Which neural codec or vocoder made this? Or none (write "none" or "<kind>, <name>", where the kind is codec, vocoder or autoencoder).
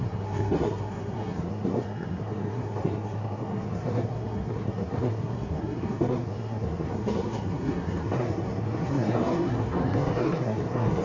codec, SNAC